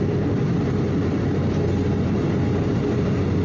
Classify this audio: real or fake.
real